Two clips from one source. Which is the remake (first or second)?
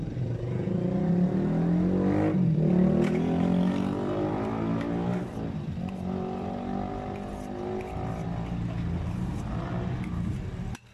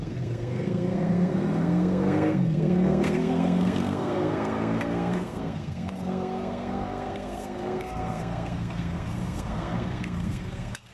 second